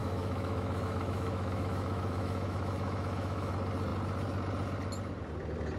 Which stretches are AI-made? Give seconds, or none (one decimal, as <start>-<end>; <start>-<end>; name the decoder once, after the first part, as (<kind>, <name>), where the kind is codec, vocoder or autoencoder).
0.0-3.5 (autoencoder, DAC-VAE)